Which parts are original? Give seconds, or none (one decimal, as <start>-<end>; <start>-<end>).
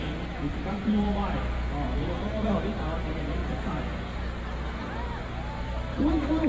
0.0-0.5; 1.4-2.0; 2.8-5.9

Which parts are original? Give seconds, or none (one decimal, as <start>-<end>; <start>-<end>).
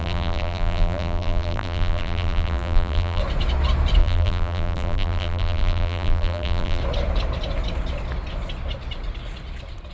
3.2-4.0; 6.8-9.9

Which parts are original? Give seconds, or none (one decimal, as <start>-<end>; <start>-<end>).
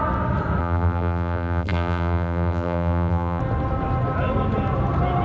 0.0-0.6; 3.4-5.2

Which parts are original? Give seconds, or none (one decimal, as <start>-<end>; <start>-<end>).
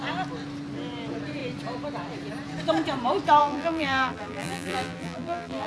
0.0-3.4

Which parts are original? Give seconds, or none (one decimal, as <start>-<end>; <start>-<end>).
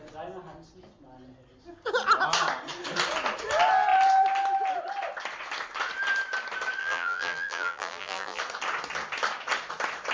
0.0-6.8; 8.4-10.1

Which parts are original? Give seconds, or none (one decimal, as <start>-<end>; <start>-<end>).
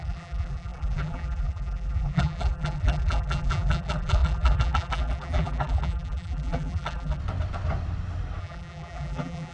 7.2-8.4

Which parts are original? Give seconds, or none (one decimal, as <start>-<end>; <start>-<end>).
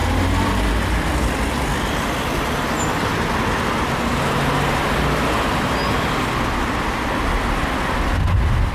0.0-8.7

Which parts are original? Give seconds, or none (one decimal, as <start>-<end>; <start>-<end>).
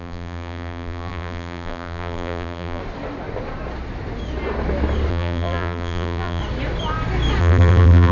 2.8-5.1; 6.4-7.4